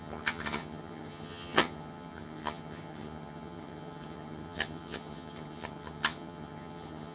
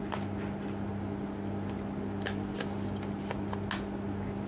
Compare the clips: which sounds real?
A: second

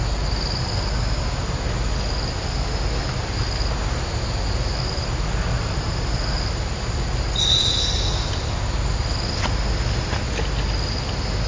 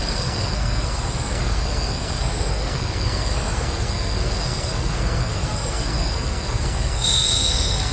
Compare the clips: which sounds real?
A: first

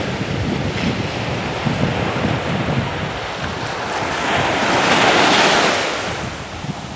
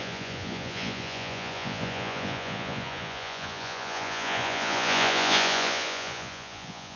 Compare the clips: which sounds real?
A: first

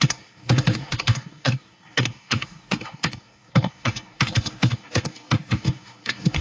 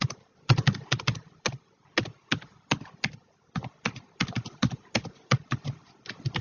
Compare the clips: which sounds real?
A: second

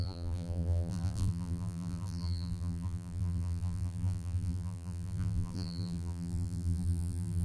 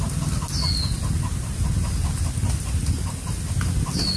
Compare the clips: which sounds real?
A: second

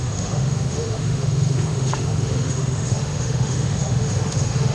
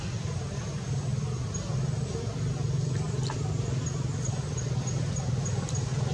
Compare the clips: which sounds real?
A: second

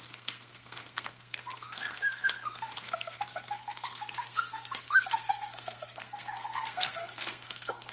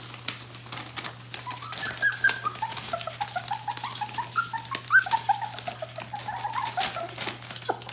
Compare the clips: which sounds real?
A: second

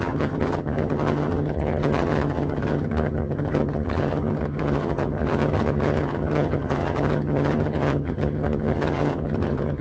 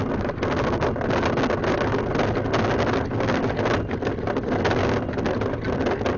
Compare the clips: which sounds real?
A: second